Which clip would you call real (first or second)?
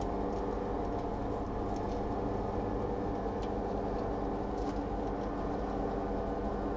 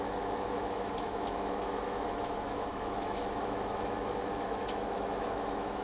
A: first